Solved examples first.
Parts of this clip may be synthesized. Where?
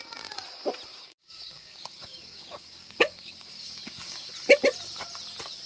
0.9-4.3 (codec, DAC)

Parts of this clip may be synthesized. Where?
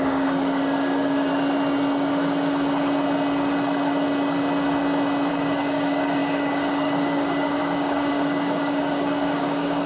0.0-1.3 (codec, DAC); 5.3-9.9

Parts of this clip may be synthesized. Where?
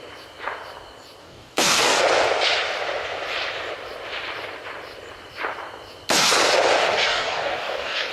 1.2-2.0 (codec, DAC); 6.8-8.1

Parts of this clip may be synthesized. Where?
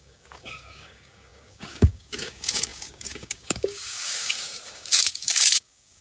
0.0-6.0 (codec, DAC)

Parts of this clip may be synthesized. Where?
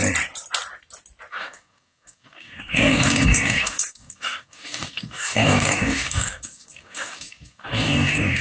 1.3-8.4 (codec, DAC)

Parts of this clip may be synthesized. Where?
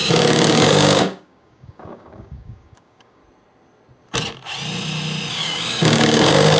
0.0-3.2 (codec, DAC); 5.3-6.6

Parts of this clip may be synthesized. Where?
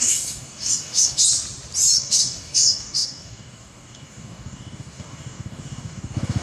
0.0-1.2 (codec, DAC); 2.0-6.4